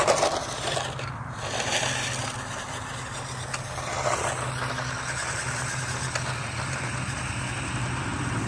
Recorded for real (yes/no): yes